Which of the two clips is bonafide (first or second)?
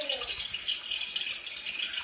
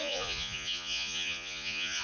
first